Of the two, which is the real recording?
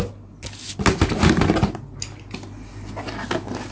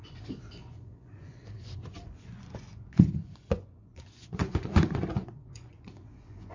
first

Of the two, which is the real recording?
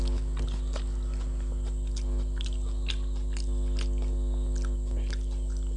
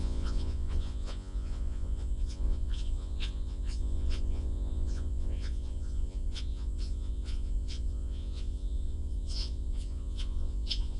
first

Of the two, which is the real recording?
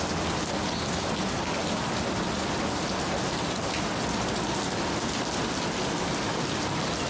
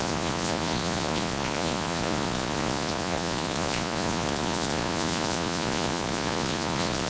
first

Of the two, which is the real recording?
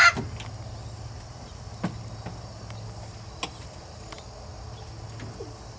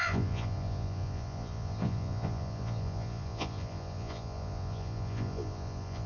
first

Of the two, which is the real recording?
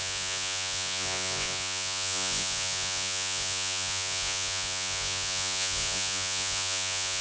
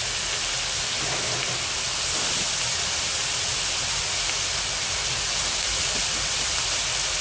second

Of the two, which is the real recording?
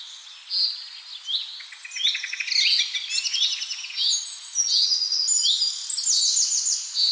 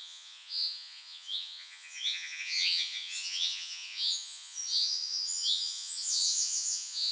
first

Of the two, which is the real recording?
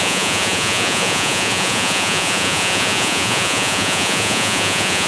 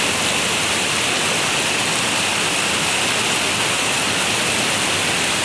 second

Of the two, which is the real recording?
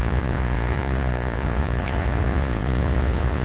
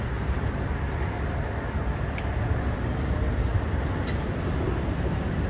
second